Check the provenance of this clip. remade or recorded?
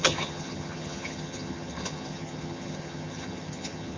remade